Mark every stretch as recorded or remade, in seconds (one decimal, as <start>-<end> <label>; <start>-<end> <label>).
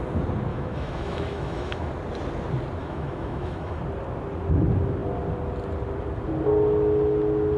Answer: 0.0-0.5 recorded; 0.5-1.9 remade; 1.9-2.8 recorded; 2.8-3.8 remade; 3.8-7.6 recorded